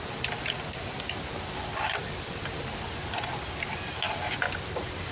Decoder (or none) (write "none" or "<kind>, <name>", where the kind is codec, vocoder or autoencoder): none